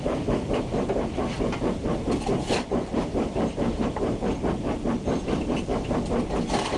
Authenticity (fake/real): real